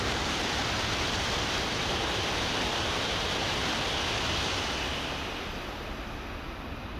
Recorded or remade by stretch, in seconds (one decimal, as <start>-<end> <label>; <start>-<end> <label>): 0.0-0.6 remade; 0.6-1.8 recorded; 1.8-3.6 remade; 3.6-7.0 recorded